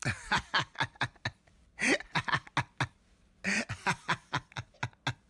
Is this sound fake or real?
real